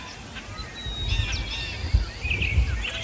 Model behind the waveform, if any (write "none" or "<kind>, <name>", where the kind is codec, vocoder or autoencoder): none